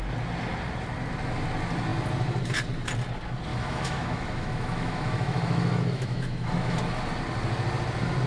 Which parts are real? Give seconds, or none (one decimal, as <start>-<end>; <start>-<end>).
0.0-3.5; 6.8-8.3